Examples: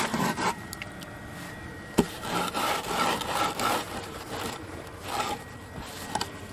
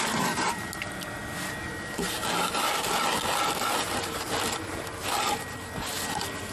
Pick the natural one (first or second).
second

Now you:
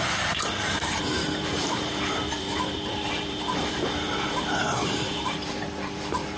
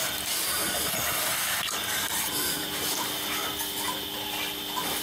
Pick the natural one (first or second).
second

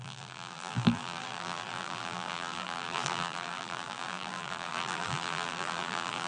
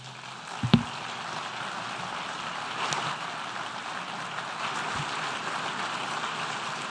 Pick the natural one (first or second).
second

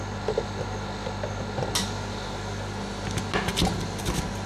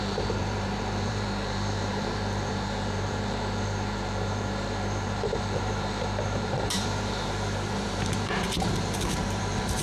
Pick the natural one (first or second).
first